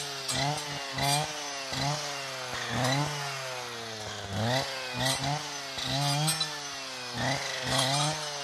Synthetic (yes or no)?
no